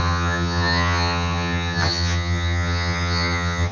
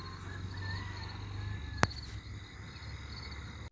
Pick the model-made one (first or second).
first